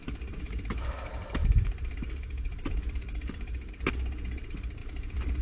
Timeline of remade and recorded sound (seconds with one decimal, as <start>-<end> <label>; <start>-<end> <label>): 0.0-1.4 recorded; 1.4-3.7 remade; 3.7-4.8 recorded; 4.8-5.4 remade